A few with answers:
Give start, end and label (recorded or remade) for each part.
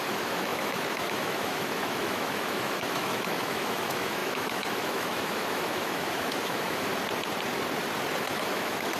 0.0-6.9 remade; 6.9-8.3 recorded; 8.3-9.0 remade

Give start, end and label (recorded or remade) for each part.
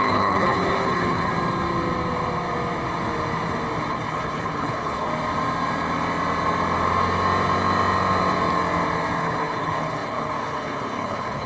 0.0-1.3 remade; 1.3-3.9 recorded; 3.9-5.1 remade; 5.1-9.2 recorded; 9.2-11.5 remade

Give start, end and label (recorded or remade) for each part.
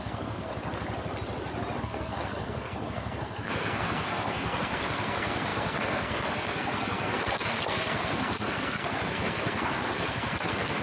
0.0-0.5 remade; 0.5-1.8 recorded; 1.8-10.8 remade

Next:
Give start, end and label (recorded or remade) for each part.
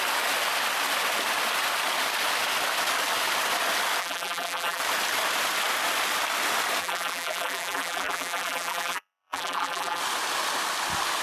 0.0-4.0 recorded; 4.0-4.8 remade; 4.8-6.8 recorded; 6.8-10.0 remade; 10.0-11.2 recorded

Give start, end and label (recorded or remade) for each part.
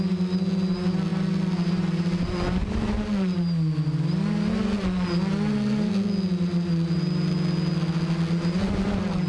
0.0-9.3 recorded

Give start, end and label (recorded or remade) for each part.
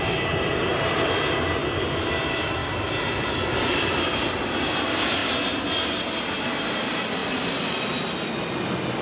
0.0-9.0 recorded